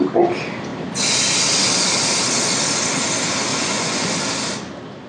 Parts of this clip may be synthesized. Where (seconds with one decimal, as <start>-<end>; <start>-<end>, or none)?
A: 3.5-4.1